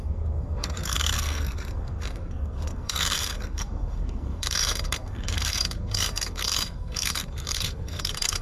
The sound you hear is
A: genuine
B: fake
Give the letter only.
B